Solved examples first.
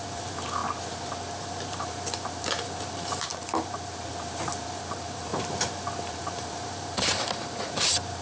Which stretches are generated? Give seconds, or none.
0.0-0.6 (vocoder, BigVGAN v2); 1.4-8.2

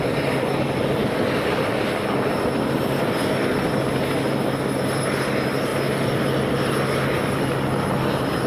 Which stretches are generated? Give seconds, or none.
none

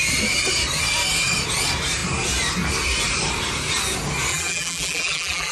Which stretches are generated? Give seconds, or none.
4.3-5.5 (vocoder, BigVGAN v2)

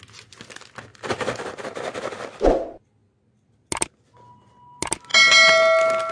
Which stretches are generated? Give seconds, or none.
0.9-2.1 (vocoder, BigVGAN v2)

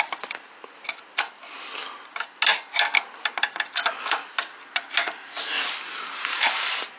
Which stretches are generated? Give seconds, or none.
none

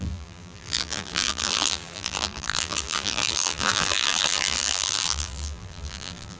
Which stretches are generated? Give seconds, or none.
0.0-6.4 (vocoder, BigVGAN v2)

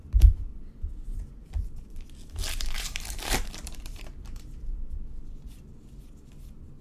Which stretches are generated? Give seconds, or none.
0.5-1.2 (vocoder, BigVGAN v2); 2.4-4.8